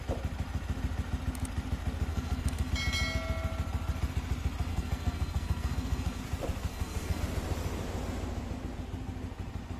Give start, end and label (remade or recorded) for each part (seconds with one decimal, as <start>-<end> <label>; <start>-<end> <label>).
0.0-2.1 recorded; 2.1-2.7 remade; 2.7-4.7 recorded; 4.7-6.2 remade; 6.2-6.7 recorded; 6.7-7.2 remade; 7.2-9.8 recorded